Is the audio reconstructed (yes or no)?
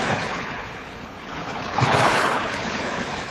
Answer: yes